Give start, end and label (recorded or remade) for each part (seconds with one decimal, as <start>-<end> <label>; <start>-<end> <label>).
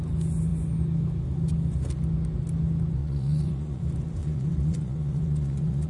0.0-3.0 recorded; 3.0-3.8 remade; 3.8-4.2 recorded; 4.2-5.9 remade